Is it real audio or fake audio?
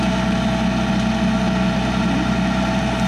real